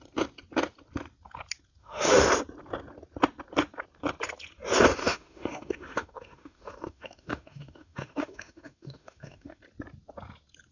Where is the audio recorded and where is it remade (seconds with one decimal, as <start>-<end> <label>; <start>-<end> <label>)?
0.0-1.8 recorded; 1.8-2.3 remade; 2.3-5.0 recorded; 5.0-9.6 remade; 9.6-10.7 recorded